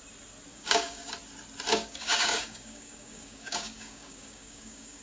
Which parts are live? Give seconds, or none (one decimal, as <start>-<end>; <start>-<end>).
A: 0.0-0.5; 1.1-1.7